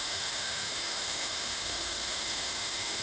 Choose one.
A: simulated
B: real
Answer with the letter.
A